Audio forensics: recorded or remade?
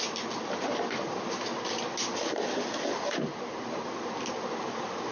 recorded